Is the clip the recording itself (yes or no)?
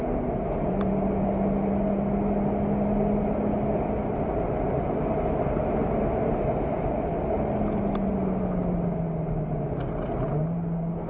yes